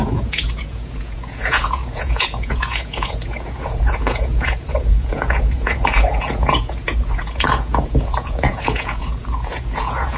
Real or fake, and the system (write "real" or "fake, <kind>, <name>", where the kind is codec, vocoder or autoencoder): fake, vocoder, Vocos